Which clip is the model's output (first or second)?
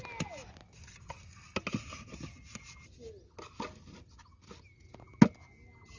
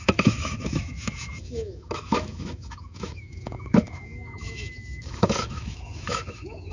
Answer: second